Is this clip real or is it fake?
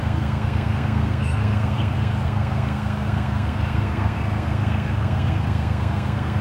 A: fake